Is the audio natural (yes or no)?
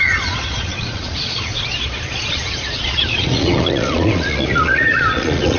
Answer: no